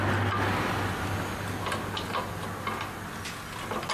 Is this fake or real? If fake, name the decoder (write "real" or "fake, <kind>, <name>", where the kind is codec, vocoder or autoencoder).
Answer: real